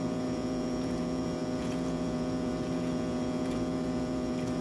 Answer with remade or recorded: remade